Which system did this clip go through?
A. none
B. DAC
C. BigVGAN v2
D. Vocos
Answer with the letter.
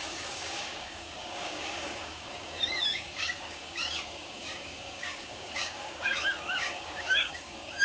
B